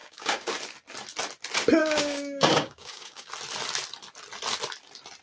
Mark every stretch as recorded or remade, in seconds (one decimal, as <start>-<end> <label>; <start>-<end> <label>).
0.0-0.5 remade; 0.5-1.8 recorded; 1.8-3.3 remade; 3.3-5.2 recorded